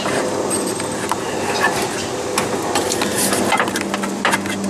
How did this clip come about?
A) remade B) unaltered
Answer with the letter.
B